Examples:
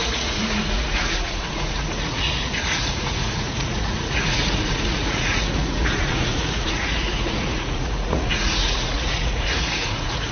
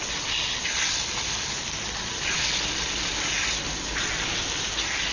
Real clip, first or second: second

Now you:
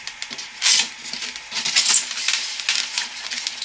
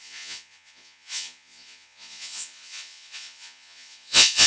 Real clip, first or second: first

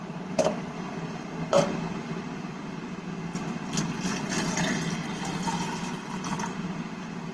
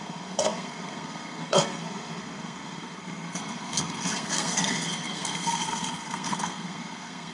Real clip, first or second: first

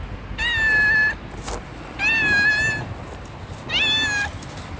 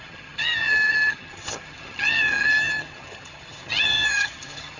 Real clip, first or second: first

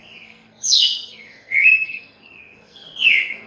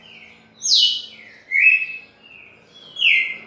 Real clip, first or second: second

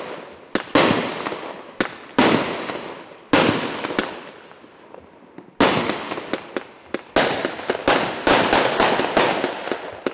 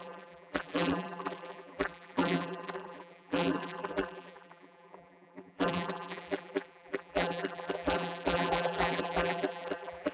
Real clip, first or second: first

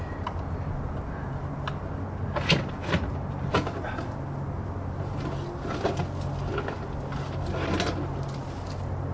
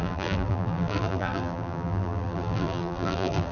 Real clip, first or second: first